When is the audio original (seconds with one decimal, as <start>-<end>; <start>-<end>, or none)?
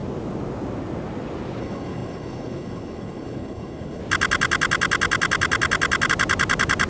0.0-1.6; 4.0-6.9